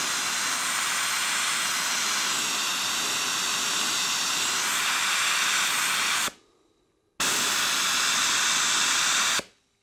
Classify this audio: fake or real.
real